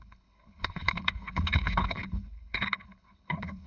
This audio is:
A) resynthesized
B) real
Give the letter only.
A